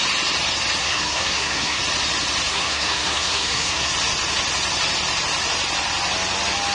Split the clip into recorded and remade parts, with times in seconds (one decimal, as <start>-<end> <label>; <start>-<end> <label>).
0.0-0.8 recorded; 0.8-1.8 remade; 1.8-2.5 recorded; 2.5-3.9 remade; 3.9-6.7 recorded